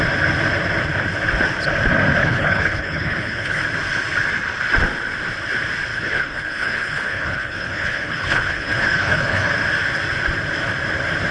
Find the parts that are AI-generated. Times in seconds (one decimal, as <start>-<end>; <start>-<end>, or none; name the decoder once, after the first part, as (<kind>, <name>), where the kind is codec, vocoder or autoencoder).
2.2-3.6 (codec, HILCodec); 5.9-9.5